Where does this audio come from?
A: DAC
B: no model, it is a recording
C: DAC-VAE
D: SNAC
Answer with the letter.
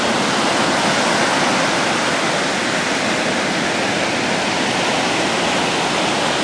B